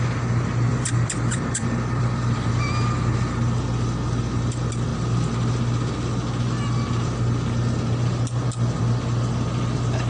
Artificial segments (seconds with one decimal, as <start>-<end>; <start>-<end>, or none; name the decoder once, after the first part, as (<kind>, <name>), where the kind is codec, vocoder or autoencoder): 0.7-2.5 (vocoder, BigVGAN v2)